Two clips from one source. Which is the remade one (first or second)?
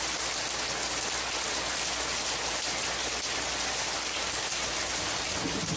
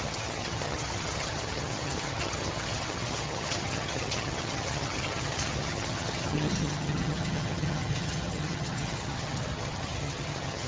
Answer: second